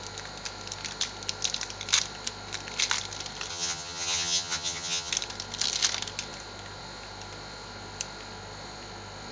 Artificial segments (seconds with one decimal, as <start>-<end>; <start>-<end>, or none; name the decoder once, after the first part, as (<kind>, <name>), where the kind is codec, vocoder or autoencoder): 3.5-5.1 (vocoder, HiFi-GAN)